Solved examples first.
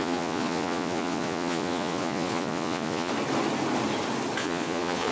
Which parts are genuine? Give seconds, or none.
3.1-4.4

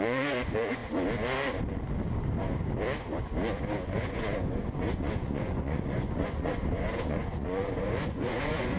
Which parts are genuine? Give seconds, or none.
0.8-3.9

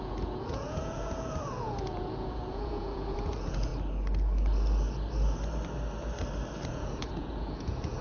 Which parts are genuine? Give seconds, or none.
3.7-6.7

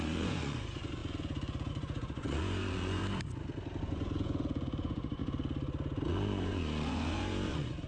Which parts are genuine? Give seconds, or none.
3.0-3.8; 5.2-6.1

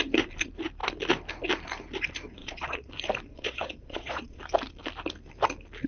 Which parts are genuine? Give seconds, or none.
0.0-2.4; 2.9-3.3; 4.4-5.9